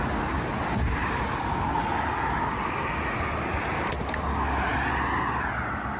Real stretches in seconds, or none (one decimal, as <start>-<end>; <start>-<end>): 0.0-6.0